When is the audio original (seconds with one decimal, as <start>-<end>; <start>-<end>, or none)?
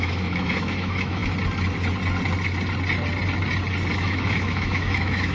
1.2-3.9